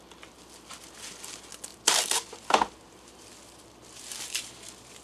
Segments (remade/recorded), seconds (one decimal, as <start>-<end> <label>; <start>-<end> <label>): 0.0-1.7 recorded; 1.7-5.0 remade